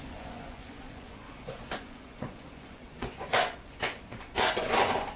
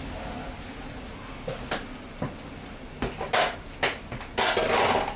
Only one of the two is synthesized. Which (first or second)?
first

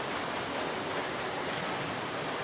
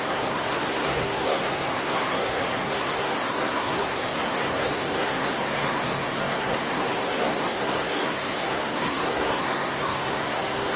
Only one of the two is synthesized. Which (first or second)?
second